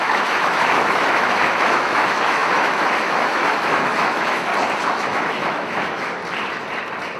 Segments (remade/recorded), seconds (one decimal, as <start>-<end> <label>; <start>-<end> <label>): 0.0-4.5 remade; 4.5-5.0 recorded; 5.0-6.2 remade; 6.2-7.2 recorded